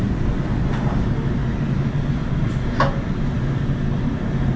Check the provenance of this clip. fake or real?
real